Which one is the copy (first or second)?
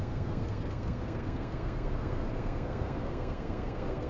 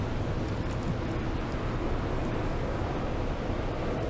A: first